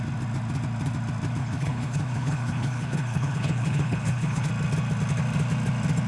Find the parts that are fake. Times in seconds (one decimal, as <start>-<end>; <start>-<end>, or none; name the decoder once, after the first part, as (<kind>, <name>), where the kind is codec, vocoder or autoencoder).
1.4-4.5 (codec, HILCodec)